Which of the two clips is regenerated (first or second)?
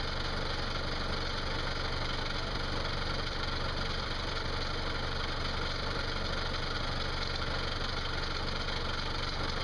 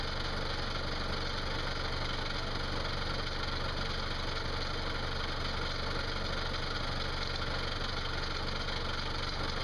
first